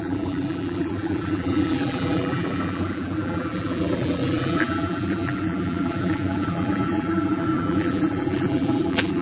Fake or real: fake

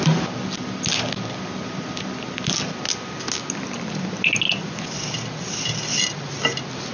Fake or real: real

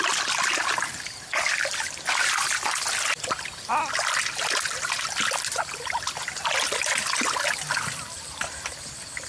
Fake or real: real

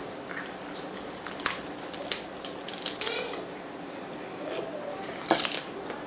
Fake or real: real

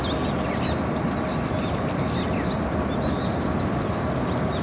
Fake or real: real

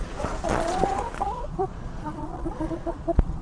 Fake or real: fake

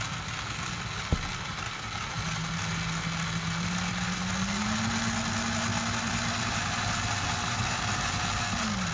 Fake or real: real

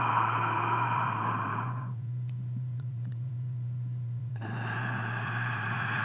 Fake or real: fake